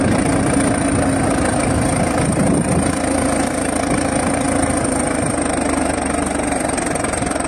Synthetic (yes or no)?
no